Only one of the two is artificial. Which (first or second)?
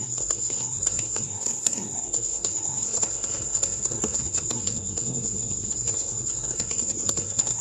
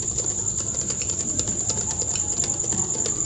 first